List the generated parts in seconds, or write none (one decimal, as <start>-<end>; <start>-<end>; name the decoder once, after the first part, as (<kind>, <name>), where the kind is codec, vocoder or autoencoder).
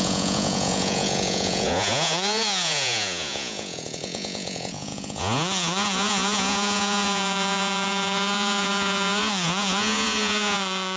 0.0-11.0 (vocoder, Vocos)